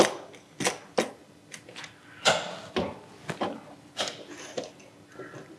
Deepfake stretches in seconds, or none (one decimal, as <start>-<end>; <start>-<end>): none